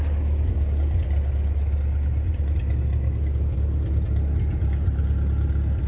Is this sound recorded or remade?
recorded